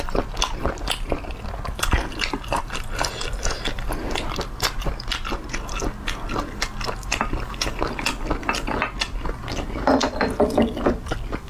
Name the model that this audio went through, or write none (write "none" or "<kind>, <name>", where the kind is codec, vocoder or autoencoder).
none